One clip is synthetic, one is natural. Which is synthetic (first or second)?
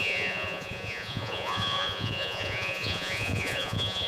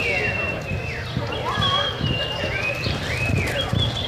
first